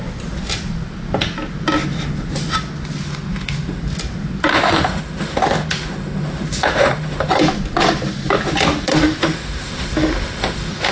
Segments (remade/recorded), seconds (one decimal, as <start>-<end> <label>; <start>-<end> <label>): 0.0-3.1 recorded; 3.1-3.8 remade; 3.8-4.5 recorded; 4.5-7.3 remade; 7.3-8.9 recorded; 8.9-10.9 remade